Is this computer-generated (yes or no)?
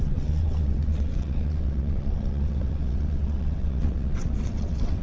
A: yes